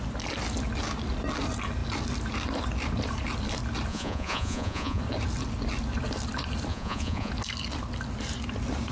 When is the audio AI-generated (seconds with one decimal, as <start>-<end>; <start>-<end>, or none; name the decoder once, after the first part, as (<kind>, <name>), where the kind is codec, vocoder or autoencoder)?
3.9-5.0 (vocoder, Vocos); 6.7-7.3